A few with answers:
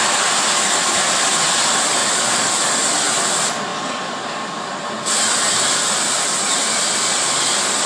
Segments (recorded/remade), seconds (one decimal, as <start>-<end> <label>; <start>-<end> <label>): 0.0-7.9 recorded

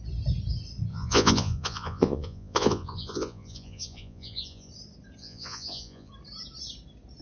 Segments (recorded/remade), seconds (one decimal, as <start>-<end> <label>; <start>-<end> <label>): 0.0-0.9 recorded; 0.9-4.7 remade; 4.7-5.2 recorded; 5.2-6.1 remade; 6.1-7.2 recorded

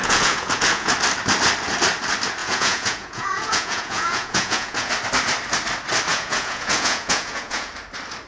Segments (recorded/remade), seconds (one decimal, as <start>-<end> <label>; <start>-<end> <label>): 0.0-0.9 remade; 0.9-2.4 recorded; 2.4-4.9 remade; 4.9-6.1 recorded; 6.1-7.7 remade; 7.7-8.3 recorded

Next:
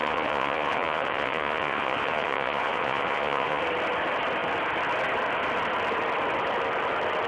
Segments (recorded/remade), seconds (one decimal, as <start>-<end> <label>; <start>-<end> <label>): 0.0-3.6 remade; 3.6-7.3 recorded

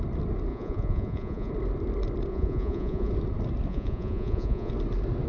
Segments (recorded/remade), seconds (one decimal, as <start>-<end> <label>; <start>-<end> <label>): 0.0-0.5 recorded; 0.5-1.5 remade; 1.5-2.3 recorded; 2.3-3.1 remade; 3.1-3.7 recorded; 3.7-4.7 remade; 4.7-5.3 recorded

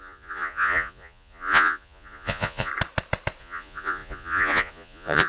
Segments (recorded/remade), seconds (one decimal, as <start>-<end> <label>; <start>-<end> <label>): 0.0-2.7 remade; 2.7-3.4 recorded; 3.4-5.3 remade

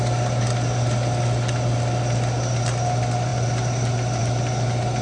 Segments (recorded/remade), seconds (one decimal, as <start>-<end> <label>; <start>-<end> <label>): 0.0-5.0 recorded